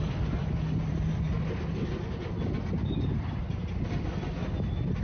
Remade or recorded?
recorded